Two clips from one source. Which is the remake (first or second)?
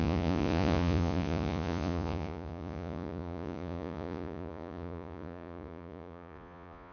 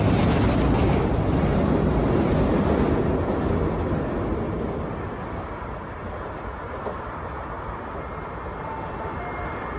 first